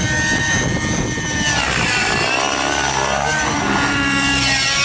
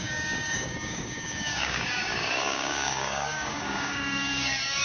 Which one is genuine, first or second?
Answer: first